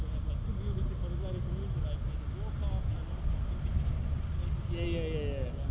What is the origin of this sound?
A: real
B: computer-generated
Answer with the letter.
A